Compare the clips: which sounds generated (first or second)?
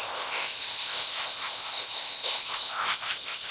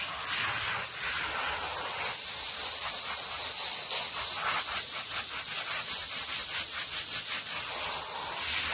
first